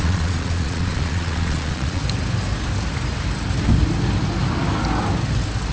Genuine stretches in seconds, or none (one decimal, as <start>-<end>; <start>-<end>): 2.0-5.7